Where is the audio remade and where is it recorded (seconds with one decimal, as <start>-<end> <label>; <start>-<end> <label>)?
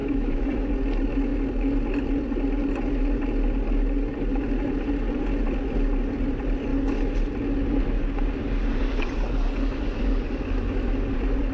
0.0-0.7 remade; 0.7-11.5 recorded